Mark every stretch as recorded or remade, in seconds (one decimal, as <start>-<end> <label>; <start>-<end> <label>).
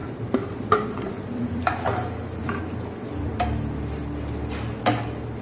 0.0-2.6 remade; 2.6-5.4 recorded